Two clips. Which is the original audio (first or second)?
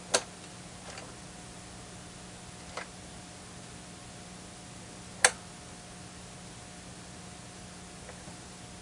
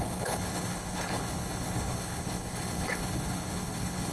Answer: first